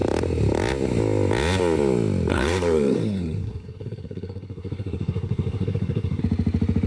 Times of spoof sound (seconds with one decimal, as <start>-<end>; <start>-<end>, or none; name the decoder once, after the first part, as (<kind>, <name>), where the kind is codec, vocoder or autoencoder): 2.3-6.2 (codec, SNAC)